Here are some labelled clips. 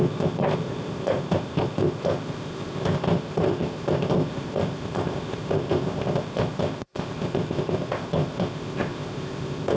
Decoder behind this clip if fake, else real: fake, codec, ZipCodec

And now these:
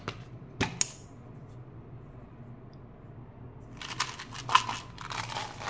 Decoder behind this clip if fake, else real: real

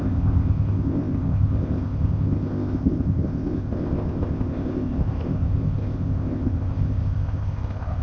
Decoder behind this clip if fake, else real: fake, codec, ZipCodec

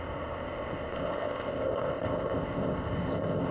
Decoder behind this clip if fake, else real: fake, codec, ZipCodec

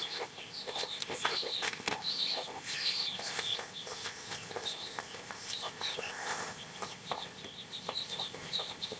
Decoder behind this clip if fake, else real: fake, codec, ZipCodec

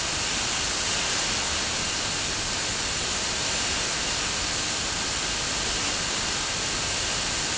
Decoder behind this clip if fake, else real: real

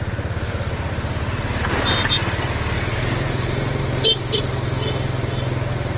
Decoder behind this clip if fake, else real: real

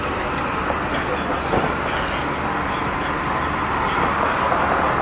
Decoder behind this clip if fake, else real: real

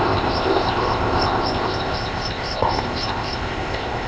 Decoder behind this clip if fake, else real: fake, codec, ZipCodec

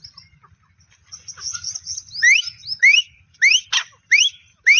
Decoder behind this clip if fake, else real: real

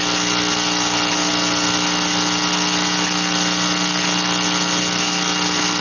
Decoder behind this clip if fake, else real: real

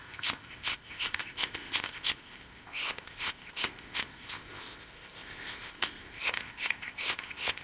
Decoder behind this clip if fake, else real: fake, codec, ZipCodec